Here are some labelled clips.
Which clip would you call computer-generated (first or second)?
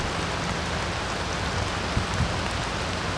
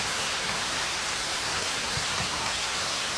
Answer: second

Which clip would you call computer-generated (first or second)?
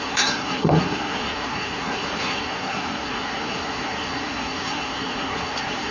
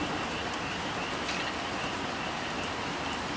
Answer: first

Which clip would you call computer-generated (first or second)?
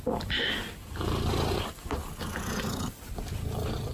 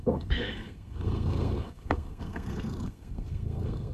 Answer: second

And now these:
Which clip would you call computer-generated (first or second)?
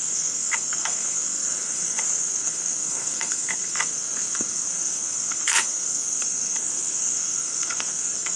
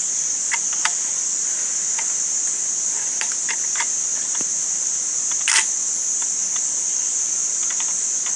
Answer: first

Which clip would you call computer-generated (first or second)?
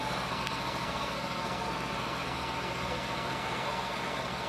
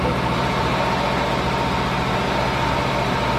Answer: first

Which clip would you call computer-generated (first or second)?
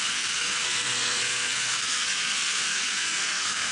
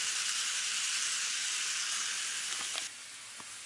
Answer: first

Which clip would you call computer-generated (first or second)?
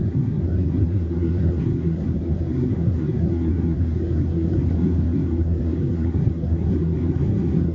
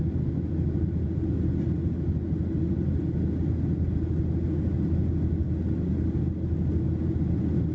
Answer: first